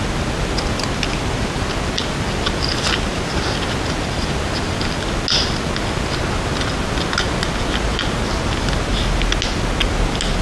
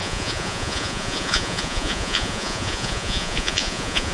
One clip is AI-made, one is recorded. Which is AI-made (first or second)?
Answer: second